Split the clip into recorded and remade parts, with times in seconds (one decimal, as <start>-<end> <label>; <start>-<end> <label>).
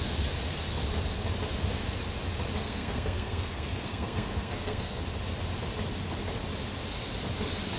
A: 0.0-2.6 recorded; 2.6-5.0 remade; 5.0-7.8 recorded